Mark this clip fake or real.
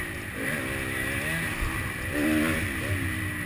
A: real